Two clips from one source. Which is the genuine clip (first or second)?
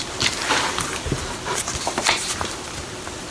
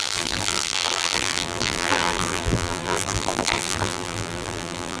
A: first